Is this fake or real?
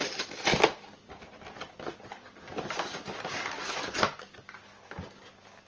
real